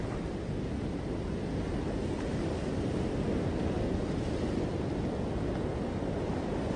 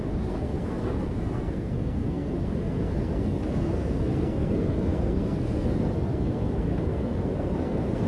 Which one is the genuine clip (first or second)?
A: first